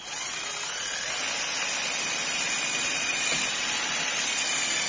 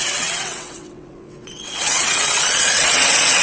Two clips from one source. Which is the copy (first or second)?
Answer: second